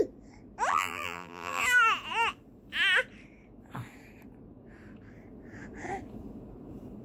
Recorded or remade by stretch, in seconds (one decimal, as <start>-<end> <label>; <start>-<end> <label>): 0.0-0.7 recorded; 0.7-1.6 remade; 1.6-7.0 recorded